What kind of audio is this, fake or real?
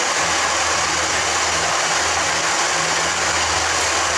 real